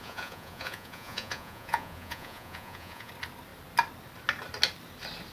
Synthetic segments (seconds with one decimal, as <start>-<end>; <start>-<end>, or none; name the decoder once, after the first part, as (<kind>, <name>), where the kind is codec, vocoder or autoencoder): 0.0-3.1 (vocoder, Vocos)